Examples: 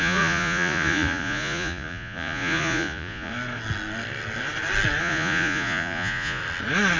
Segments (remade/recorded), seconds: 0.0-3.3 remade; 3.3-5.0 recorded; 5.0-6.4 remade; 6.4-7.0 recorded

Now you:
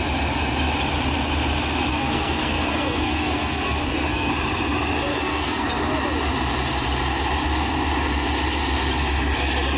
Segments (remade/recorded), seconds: 0.0-1.9 recorded; 1.9-4.3 remade; 4.3-5.1 recorded; 5.1-5.8 remade; 5.8-9.8 recorded

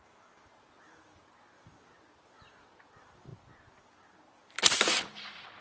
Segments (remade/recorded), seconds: 0.0-5.6 recorded